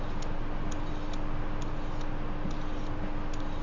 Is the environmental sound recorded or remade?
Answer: recorded